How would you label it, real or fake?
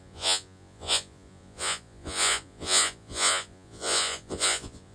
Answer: fake